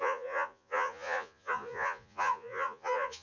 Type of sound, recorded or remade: remade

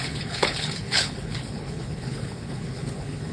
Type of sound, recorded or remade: remade